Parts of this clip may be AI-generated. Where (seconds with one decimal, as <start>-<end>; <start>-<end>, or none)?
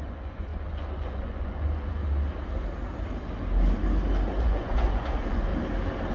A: 0.0-2.0; 4.4-5.5